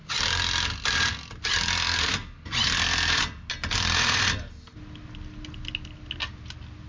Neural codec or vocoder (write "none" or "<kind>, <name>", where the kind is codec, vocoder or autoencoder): none